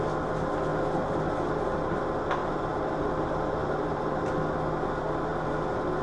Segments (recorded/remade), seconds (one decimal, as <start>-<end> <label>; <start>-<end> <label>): 0.0-2.4 recorded; 2.4-3.0 remade; 3.0-3.6 recorded; 3.6-4.3 remade; 4.3-6.0 recorded